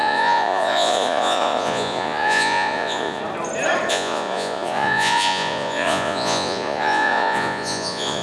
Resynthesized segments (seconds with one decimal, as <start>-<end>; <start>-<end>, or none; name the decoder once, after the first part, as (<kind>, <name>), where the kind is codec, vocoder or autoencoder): 0.0-3.2 (vocoder, Vocos); 3.9-8.2

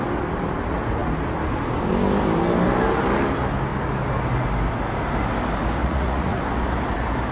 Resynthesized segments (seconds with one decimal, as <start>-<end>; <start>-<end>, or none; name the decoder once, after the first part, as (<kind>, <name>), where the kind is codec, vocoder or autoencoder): 5.8-6.4 (vocoder, Vocos)